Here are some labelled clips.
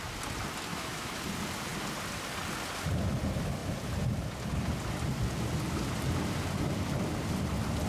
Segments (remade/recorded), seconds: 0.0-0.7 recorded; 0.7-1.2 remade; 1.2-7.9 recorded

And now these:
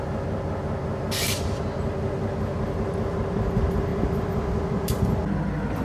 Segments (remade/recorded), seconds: 0.0-5.8 recorded

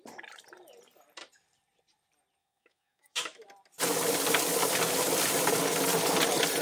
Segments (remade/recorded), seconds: 0.0-2.4 recorded; 2.4-3.4 remade; 3.4-6.6 recorded

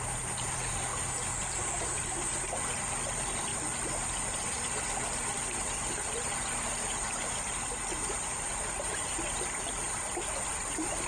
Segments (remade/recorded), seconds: 0.0-11.1 recorded

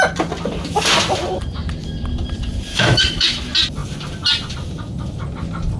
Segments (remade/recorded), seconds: 0.0-2.7 recorded; 2.7-3.4 remade; 3.4-5.8 recorded

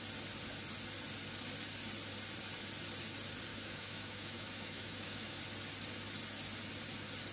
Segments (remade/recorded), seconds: 0.0-3.5 recorded; 3.5-5.4 remade; 5.4-7.3 recorded